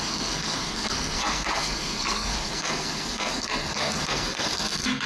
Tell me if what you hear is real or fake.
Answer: fake